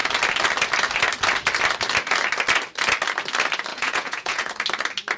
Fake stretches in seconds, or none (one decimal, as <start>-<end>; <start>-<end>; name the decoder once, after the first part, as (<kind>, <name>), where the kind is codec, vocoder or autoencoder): 3.7-4.5 (vocoder, Vocos)